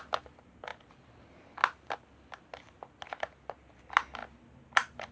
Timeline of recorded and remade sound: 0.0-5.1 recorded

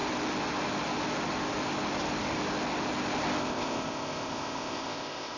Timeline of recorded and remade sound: 0.0-3.4 recorded; 3.4-5.4 remade